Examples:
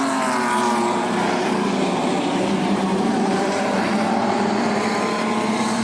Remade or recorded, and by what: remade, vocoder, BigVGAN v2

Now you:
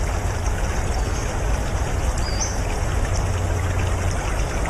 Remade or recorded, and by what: recorded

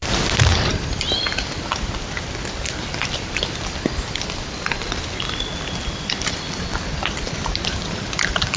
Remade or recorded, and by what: remade, vocoder, BigVGAN v2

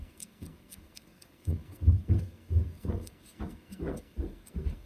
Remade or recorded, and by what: remade, codec, SNAC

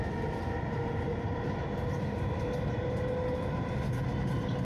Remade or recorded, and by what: recorded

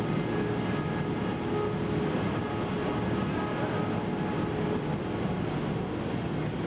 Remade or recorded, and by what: recorded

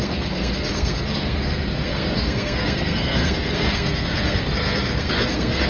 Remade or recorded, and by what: remade, codec, SNAC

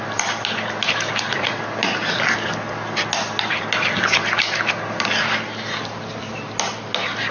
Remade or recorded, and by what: recorded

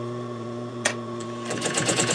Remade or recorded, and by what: remade, vocoder, Vocos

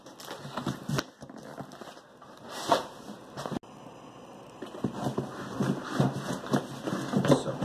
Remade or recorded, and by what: recorded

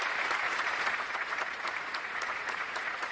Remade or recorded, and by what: remade, vocoder, Vocos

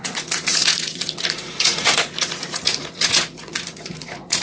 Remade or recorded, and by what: remade, vocoder, Vocos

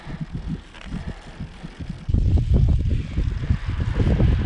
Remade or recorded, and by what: recorded